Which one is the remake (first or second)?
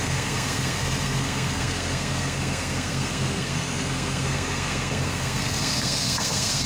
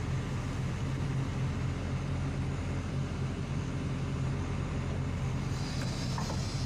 first